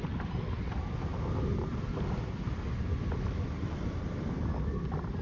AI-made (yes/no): no